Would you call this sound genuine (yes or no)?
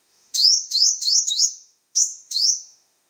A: no